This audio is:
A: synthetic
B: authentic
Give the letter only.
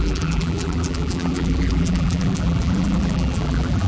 A